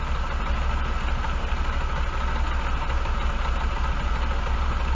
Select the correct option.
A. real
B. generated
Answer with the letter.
A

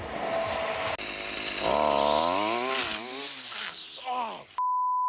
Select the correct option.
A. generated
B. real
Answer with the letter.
B